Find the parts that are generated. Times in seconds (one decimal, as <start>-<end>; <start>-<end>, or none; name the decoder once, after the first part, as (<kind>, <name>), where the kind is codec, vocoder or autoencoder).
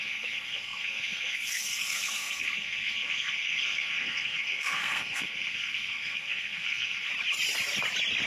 0.0-7.1 (codec, SNAC)